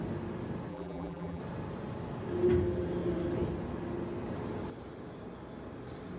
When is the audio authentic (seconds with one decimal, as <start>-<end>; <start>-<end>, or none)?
0.0-0.7; 1.4-6.2